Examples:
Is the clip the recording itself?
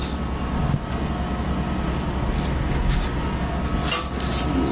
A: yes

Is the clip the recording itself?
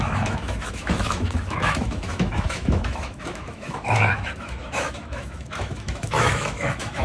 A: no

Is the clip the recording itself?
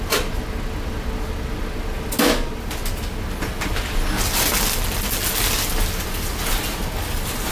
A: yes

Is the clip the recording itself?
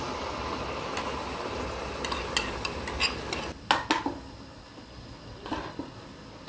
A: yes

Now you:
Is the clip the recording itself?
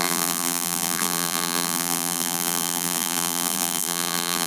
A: no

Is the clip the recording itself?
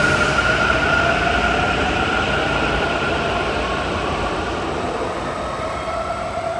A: yes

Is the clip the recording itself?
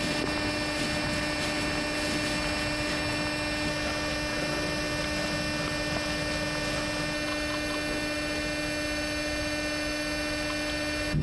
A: yes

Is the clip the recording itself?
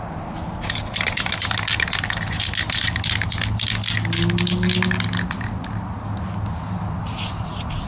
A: yes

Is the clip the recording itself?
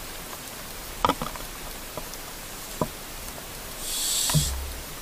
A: no